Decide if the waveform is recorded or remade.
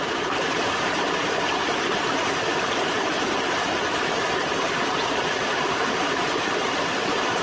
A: remade